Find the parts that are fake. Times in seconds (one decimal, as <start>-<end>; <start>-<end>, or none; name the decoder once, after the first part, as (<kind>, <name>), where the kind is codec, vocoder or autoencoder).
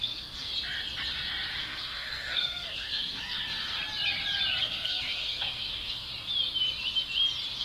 0.0-0.5 (codec, SNAC); 1.6-3.8; 4.6-6.1